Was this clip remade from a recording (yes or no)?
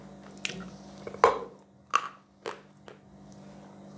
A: no